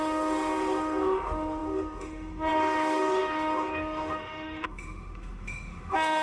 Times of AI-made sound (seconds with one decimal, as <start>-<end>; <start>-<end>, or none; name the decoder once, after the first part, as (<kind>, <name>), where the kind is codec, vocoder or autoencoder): 0.0-6.2 (autoencoder, DAC-VAE)